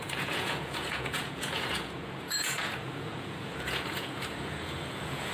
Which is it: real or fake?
fake